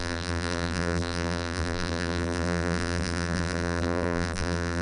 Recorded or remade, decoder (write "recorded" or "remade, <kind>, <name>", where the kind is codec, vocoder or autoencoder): remade, vocoder, BigVGAN v2